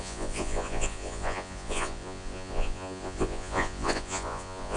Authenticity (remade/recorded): remade